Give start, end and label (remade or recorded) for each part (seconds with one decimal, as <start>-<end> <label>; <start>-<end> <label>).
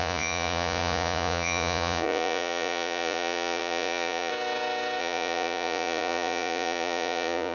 0.0-4.3 remade; 4.3-5.0 recorded; 5.0-7.5 remade